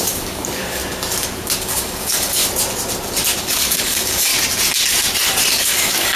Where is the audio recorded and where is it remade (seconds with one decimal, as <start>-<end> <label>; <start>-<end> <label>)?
0.0-0.8 remade; 0.8-1.6 recorded; 1.6-2.4 remade; 2.4-3.4 recorded; 3.4-4.3 remade; 4.3-5.5 recorded; 5.5-6.2 remade